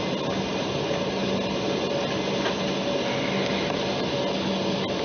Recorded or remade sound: recorded